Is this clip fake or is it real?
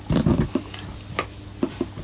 real